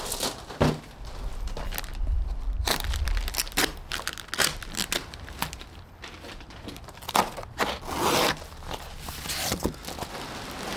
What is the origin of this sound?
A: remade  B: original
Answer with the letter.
B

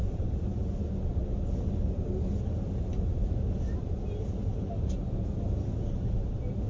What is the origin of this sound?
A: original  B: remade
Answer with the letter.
A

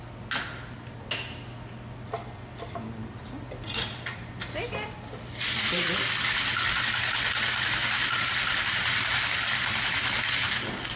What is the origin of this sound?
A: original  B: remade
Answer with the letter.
A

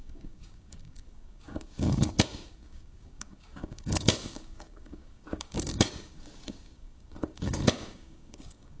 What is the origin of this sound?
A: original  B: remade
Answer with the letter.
B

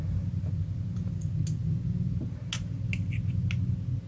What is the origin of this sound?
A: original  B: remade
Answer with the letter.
A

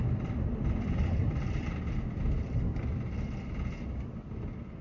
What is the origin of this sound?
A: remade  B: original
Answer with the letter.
B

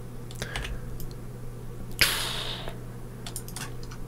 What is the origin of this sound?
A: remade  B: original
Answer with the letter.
B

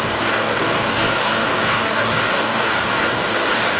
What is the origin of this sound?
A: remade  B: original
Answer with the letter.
A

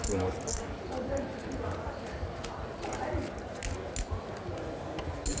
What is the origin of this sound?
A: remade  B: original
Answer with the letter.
B